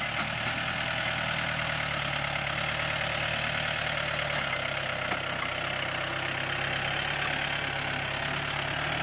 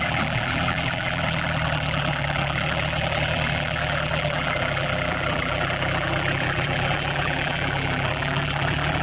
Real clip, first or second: first